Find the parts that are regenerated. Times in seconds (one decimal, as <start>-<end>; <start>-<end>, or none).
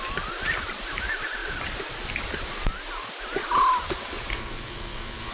4.3-5.3